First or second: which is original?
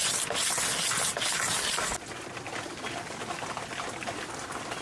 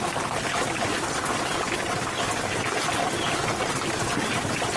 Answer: first